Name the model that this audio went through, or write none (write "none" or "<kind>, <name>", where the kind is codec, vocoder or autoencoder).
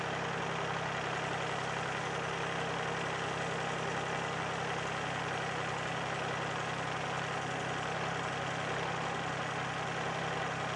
none